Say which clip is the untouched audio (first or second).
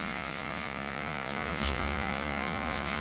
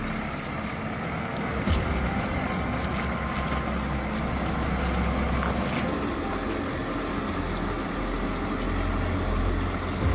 second